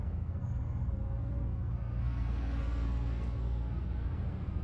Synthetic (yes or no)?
yes